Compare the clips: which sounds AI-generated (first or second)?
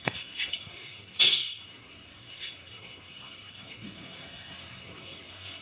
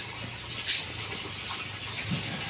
first